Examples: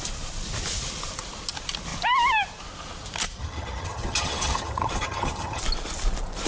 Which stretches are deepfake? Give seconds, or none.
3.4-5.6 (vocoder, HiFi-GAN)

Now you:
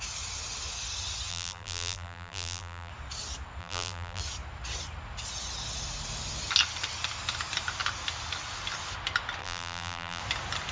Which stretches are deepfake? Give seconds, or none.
1.3-2.9 (vocoder, BigVGAN v2); 3.6-4.2; 9.4-10.2

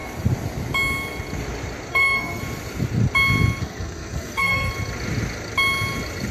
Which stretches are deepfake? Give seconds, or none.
1.9-2.4 (codec, SNAC); 3.6-4.7